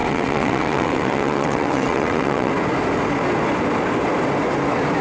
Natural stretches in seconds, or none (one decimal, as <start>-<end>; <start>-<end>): 2.5-5.0